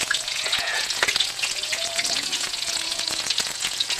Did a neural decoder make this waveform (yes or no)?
yes